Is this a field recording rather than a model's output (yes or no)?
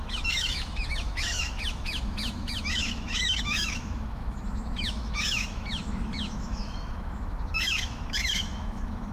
no